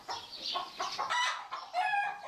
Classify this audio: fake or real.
real